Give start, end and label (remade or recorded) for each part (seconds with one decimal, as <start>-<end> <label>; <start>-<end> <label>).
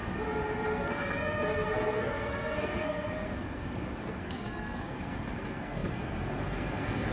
0.0-0.7 recorded; 0.7-7.1 remade